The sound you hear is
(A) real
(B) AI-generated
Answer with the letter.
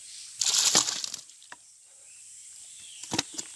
B